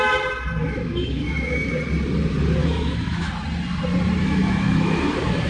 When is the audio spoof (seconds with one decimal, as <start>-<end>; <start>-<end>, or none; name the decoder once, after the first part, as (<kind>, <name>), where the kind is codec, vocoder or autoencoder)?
0.6-1.7 (autoencoder, DAC-VAE); 2.6-3.3; 4.2-5.5